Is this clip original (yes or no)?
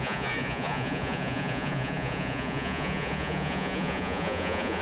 no